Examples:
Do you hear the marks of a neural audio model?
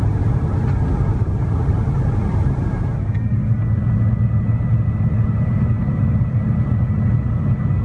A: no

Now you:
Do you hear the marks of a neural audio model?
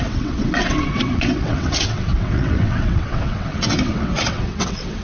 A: yes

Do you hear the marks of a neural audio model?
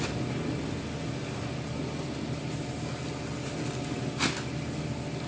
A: no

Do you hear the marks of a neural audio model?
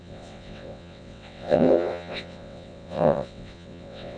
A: yes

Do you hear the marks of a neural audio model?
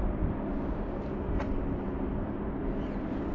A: no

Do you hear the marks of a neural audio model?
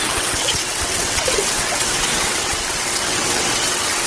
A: yes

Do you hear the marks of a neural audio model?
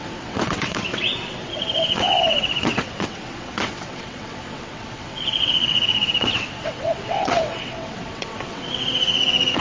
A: yes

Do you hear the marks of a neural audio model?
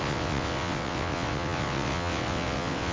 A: yes